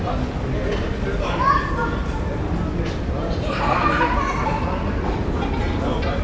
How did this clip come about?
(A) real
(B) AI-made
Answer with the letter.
A